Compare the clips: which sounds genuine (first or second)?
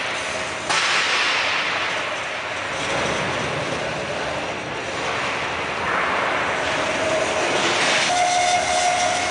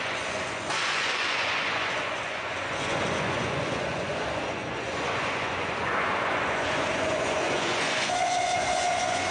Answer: first